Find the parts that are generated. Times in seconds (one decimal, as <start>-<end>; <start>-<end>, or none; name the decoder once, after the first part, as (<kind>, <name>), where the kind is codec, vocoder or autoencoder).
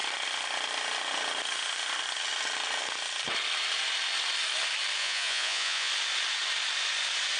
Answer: 5.0-5.9 (vocoder, Vocos)